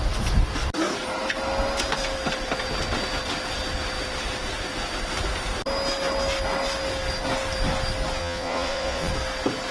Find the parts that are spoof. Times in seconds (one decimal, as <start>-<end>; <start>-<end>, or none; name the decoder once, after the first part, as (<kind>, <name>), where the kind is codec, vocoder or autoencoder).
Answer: 8.2-9.1 (vocoder, Vocos)